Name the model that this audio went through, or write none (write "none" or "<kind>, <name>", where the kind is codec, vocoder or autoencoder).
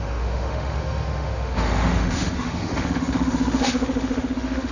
autoencoder, DAC-VAE